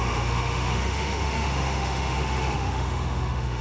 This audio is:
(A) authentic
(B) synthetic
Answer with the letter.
B